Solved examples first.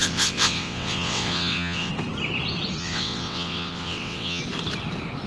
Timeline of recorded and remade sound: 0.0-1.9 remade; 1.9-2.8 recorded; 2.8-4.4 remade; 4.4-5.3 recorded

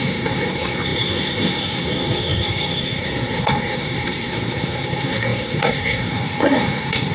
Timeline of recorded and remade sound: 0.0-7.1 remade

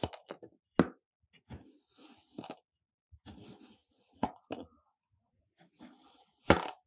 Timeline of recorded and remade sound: 0.0-3.8 recorded; 3.8-5.4 remade; 5.4-6.9 recorded